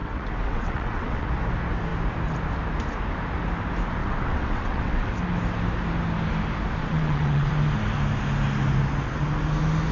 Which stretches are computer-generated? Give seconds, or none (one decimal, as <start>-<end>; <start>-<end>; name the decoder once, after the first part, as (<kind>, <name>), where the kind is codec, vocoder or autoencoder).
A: 0.0-1.3 (vocoder, WaveNeXt); 4.0-5.1; 6.8-7.5